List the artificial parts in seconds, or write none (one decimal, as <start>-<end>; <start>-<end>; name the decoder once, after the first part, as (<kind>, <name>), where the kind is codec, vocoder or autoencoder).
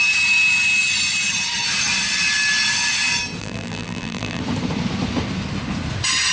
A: 3.4-4.4 (vocoder, BigVGAN v2)